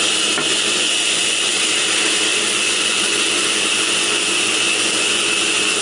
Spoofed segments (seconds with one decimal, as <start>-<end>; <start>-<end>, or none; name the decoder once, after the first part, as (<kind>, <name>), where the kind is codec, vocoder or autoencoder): 0.5-1.6 (vocoder, Vocos); 2.3-5.8